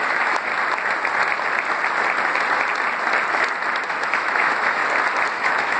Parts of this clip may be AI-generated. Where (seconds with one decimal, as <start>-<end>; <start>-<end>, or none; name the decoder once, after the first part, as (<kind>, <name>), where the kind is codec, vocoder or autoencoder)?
0.0-0.5 (autoencoder, DAC-VAE); 3.9-4.8; 5.3-5.8